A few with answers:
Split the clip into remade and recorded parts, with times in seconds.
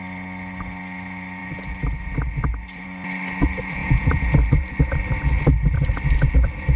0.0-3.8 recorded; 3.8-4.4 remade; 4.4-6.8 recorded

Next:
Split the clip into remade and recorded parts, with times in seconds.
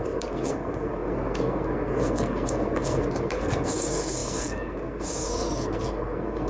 0.0-6.5 remade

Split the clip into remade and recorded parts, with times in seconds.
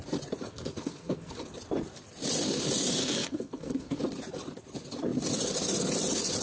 0.0-0.5 recorded; 0.5-1.4 remade; 1.4-3.0 recorded; 3.0-4.0 remade; 4.0-6.4 recorded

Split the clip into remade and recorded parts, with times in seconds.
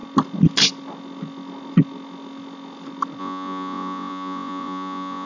0.0-3.2 recorded; 3.2-5.3 remade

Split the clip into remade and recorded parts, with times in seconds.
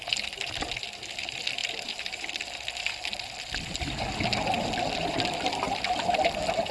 0.0-6.7 recorded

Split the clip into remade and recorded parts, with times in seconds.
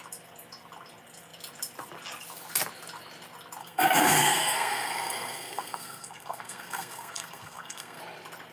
0.0-3.6 recorded; 3.6-8.0 remade; 8.0-8.5 recorded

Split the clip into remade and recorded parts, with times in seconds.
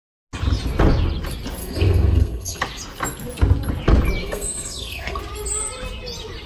0.0-1.6 recorded; 1.6-2.6 remade; 2.6-4.2 recorded; 4.2-5.2 remade; 5.2-6.5 recorded